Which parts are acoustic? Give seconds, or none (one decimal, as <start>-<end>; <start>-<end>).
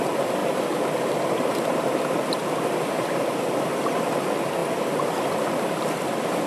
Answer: 0.0-6.5